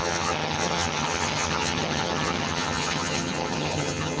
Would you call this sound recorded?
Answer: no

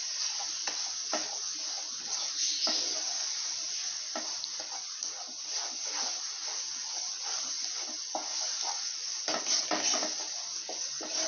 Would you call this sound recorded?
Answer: yes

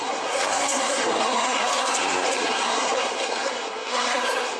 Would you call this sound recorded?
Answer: no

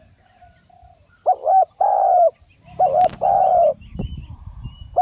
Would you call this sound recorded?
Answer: no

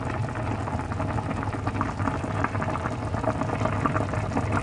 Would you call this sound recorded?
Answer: yes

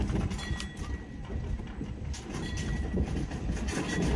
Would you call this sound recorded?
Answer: yes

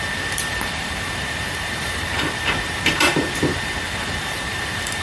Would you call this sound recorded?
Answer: no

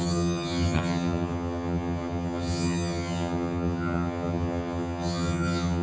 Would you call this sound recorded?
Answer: no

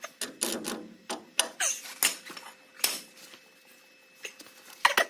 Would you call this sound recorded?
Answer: yes